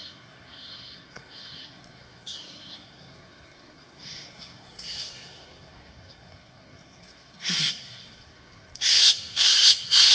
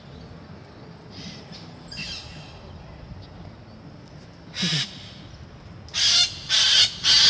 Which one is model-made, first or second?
first